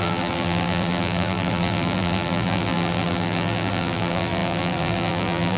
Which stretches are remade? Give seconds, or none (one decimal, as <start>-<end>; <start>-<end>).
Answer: 0.0-5.6